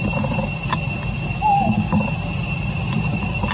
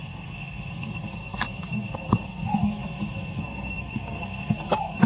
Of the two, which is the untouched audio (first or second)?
first